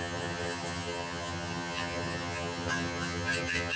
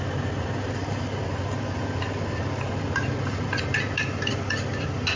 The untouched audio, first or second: second